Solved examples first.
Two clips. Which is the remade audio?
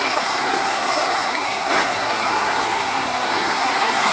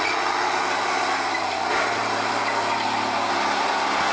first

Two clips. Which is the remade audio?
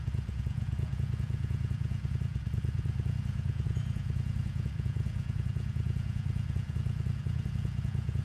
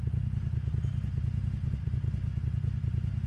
first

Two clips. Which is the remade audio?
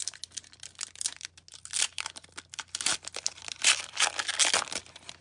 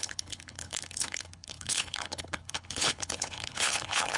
second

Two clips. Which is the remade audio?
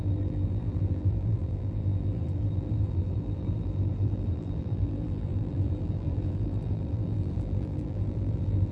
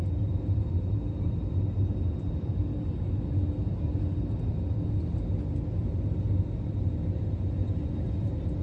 first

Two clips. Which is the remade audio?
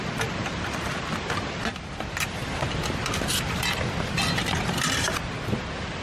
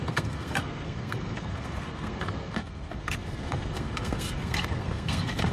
second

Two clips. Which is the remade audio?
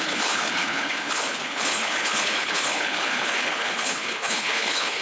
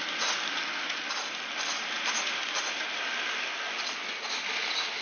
first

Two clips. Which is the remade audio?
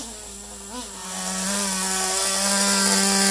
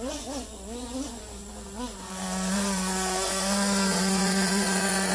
second